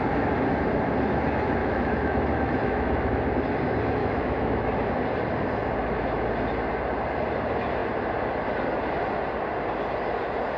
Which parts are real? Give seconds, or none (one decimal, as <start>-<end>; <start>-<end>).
0.0-1.6; 3.1-4.0; 4.9-10.6